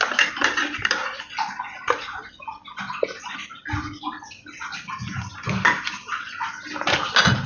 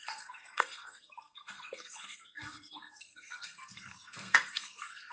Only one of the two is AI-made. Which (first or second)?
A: second